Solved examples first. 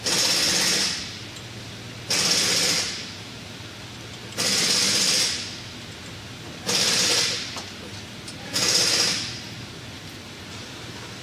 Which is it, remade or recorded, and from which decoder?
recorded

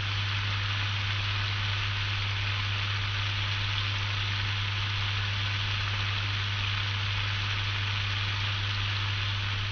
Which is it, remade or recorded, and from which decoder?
recorded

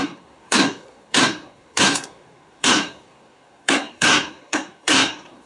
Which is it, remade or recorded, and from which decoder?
remade, codec, SNAC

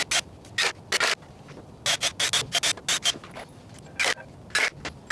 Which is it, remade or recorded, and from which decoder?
recorded